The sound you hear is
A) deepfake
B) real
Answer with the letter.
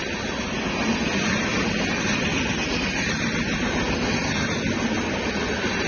B